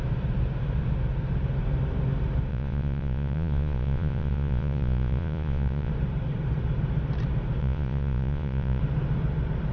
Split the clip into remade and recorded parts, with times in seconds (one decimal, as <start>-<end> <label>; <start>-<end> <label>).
0.0-2.5 recorded; 2.5-5.9 remade; 5.9-7.6 recorded; 7.6-8.8 remade; 8.8-9.7 recorded